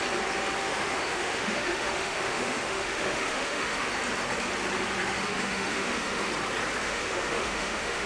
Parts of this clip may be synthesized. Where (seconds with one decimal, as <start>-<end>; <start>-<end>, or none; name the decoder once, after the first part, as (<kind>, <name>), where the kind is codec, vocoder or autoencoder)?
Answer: 0.6-3.9 (autoencoder, DAC-VAE); 5.0-6.3; 6.8-8.1